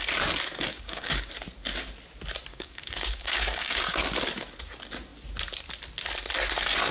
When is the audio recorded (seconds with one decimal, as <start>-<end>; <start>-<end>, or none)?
0.0-0.7; 1.3-2.5; 4.0-6.9